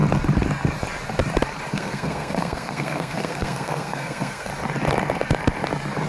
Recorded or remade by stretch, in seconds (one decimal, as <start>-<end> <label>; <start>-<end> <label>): 0.0-1.7 recorded; 1.7-4.5 remade; 4.5-6.1 recorded